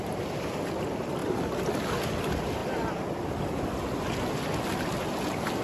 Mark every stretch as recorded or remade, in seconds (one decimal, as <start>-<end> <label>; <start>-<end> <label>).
0.0-1.2 recorded; 1.2-1.8 remade; 1.8-2.6 recorded; 2.6-4.1 remade; 4.1-5.6 recorded